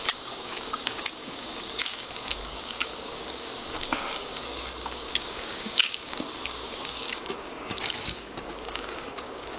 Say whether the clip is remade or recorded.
remade